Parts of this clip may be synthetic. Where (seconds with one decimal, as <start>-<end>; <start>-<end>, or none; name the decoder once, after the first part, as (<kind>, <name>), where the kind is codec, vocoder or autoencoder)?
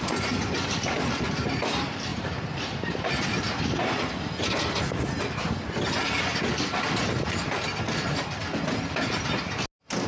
2.1-3.4 (vocoder, BigVGAN v2)